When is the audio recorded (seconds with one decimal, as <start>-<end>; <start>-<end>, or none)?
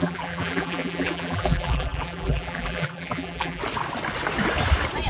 3.6-5.1